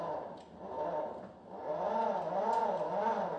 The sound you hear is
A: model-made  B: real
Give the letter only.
B